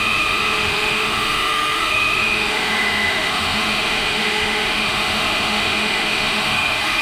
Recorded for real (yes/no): no